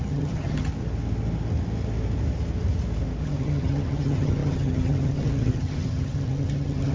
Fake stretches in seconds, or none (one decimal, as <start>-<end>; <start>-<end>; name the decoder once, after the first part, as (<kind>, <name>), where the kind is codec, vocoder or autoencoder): 0.0-0.7 (vocoder, HiFi-GAN); 3.2-6.9